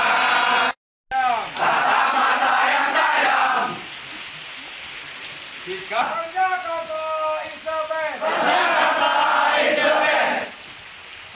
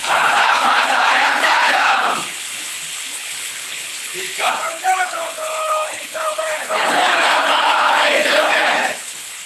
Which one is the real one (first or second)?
first